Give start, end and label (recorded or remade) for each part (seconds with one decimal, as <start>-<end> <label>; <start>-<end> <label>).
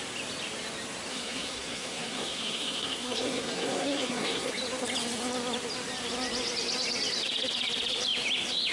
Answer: 0.0-1.1 recorded; 1.1-4.5 remade; 4.5-8.7 recorded